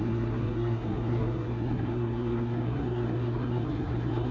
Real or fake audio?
fake